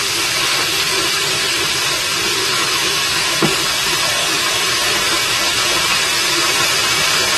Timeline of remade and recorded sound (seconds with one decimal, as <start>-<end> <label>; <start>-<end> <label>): 0.0-2.4 recorded; 2.4-3.4 remade; 3.4-4.2 recorded; 4.2-5.4 remade; 5.4-7.4 recorded